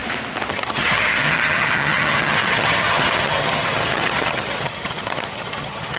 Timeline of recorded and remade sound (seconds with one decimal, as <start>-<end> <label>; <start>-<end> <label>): 0.0-0.5 recorded; 0.5-6.0 remade